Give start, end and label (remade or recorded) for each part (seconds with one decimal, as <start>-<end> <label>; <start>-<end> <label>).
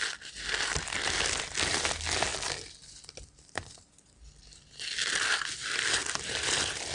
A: 0.0-6.9 recorded